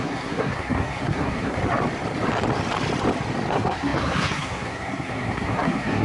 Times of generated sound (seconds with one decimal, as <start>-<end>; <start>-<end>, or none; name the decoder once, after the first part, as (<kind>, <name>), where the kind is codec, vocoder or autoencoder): 0.0-1.6 (codec, SNAC); 3.5-6.0